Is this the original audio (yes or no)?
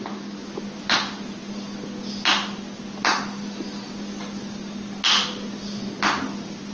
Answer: yes